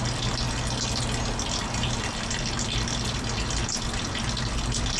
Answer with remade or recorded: recorded